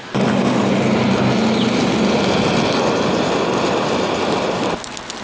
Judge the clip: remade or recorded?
recorded